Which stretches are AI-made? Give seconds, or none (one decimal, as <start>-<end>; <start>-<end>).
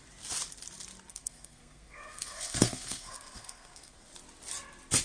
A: 1.1-4.1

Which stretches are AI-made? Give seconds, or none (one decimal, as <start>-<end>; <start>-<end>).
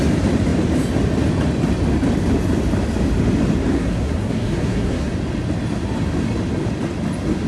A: 3.7-5.1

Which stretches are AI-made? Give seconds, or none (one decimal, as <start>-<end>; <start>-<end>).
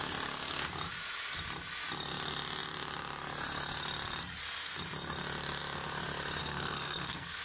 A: 6.4-7.4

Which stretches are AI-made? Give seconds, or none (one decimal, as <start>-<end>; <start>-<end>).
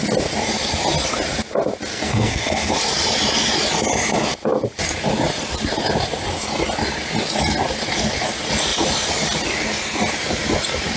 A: 1.9-2.7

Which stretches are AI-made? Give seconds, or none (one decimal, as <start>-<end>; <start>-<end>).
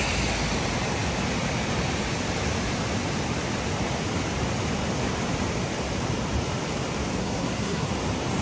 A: 7.2-7.9